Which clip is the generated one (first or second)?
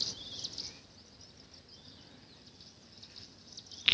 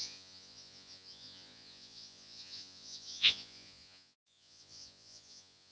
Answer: second